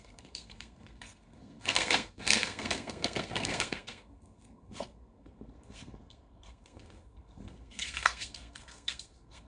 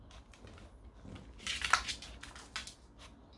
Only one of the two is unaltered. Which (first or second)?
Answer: second